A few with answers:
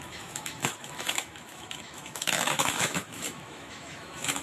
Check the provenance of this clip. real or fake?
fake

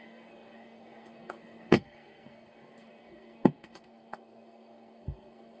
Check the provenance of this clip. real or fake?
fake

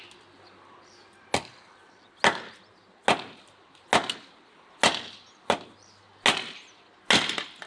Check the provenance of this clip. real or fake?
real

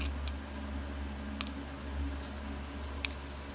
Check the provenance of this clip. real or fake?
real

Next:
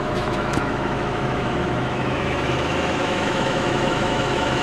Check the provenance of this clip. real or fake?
fake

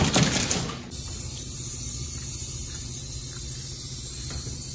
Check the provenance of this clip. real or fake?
real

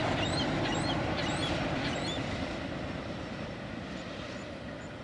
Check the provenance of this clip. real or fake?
fake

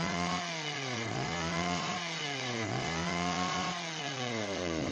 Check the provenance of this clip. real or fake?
fake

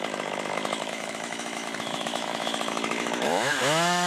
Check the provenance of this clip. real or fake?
fake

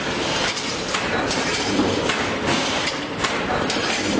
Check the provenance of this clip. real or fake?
fake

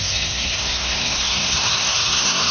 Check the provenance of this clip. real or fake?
fake